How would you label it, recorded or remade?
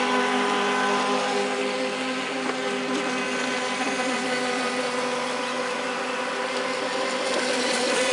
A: recorded